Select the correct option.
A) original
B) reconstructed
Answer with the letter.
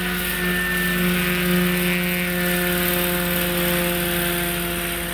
A